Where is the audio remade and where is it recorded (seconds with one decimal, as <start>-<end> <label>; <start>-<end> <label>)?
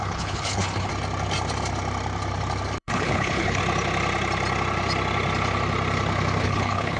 0.0-0.9 remade; 0.9-2.8 recorded; 2.8-3.6 remade; 3.6-6.4 recorded; 6.4-7.0 remade